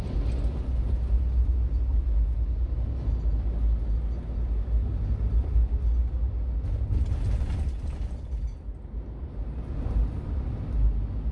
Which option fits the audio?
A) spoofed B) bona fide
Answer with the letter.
B